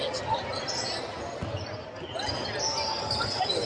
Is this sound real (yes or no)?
yes